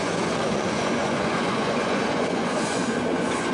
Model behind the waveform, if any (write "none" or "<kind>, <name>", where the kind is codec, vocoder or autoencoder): vocoder, Vocos